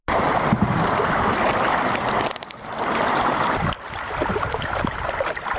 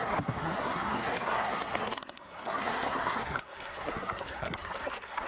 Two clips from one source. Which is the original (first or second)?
first